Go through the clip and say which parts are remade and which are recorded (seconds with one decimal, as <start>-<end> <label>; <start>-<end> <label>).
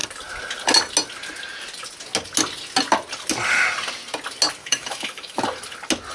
0.0-4.6 recorded; 4.6-5.4 remade; 5.4-6.1 recorded